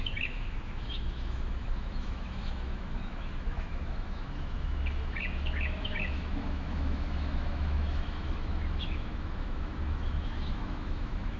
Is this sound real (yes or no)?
no